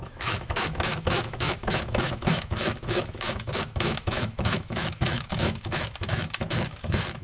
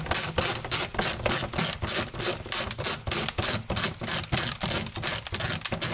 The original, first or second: second